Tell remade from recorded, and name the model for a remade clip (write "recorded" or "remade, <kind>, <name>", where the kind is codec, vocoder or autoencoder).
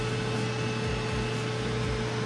recorded